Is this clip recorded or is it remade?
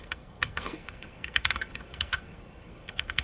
remade